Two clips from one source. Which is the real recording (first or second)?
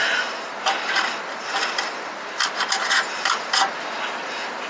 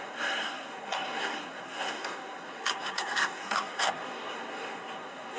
first